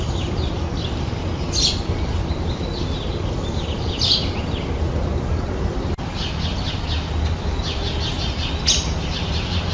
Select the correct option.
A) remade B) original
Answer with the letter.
B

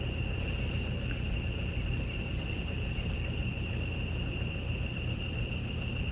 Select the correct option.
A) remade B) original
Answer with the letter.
B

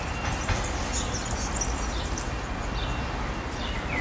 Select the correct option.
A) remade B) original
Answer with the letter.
B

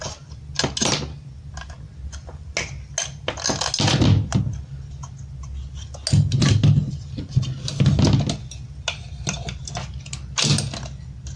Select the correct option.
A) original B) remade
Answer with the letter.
A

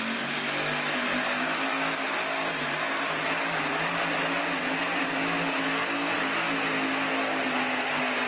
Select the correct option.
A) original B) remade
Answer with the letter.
A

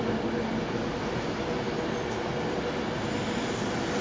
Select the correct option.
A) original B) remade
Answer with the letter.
A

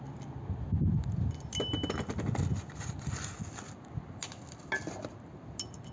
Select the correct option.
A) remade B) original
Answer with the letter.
B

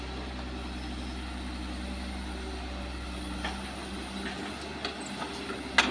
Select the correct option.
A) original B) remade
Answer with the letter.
A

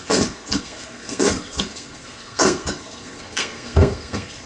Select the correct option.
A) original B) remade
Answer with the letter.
B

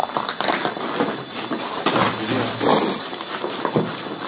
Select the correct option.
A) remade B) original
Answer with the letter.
B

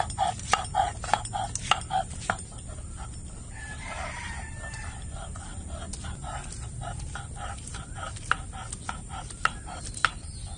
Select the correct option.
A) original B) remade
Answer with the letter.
A